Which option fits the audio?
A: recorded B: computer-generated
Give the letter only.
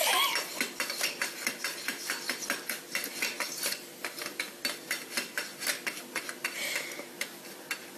B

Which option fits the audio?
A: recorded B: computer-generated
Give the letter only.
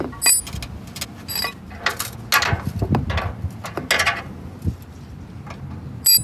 A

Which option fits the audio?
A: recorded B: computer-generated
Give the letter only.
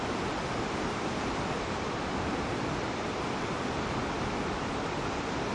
B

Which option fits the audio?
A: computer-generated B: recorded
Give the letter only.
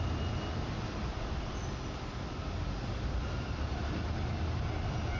B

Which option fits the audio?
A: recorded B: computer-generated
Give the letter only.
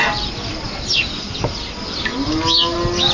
A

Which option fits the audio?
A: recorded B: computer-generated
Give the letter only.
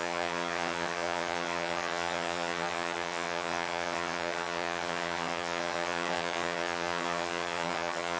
B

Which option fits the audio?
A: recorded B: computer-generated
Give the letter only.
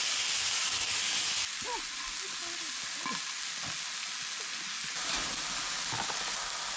A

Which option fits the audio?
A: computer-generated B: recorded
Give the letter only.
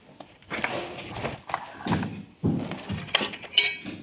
B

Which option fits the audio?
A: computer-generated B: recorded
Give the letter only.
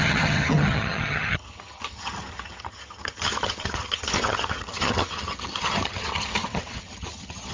A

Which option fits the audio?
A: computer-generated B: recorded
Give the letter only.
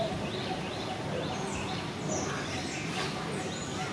B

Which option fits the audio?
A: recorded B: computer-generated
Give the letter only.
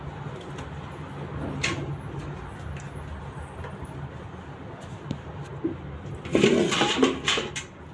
A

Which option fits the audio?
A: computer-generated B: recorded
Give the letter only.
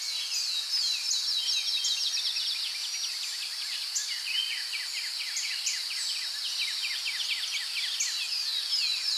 B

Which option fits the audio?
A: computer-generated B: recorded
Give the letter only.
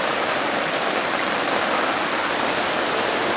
B